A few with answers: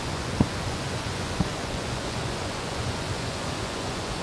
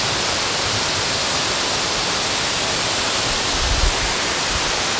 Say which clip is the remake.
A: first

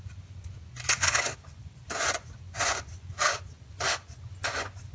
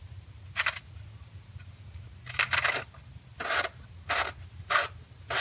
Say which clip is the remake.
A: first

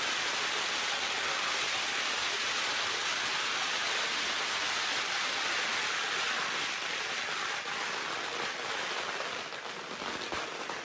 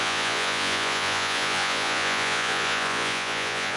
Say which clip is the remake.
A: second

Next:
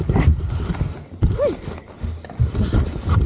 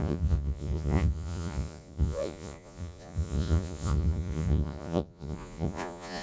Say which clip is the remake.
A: second